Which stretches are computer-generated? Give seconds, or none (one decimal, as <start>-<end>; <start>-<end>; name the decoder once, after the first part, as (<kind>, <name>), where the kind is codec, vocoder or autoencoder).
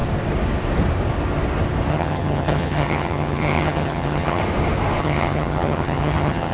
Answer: 1.9-4.4 (vocoder, HiFi-GAN); 5.0-6.5